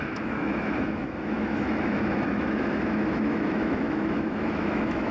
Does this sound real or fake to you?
fake